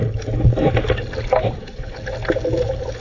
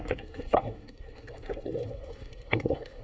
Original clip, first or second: first